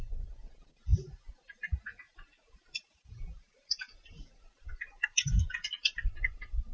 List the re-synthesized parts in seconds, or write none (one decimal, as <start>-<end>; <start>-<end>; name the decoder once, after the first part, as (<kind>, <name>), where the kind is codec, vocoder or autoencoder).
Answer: 0.0-6.7 (vocoder, Vocos)